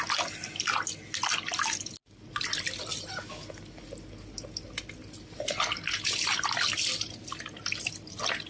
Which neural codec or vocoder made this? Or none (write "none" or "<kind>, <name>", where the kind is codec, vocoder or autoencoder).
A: none